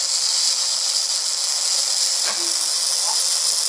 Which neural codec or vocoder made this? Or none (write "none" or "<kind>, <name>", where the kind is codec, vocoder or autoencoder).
none